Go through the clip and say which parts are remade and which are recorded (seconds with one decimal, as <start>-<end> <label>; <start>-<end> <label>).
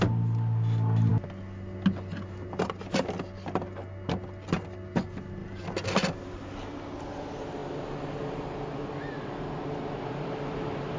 0.0-11.0 recorded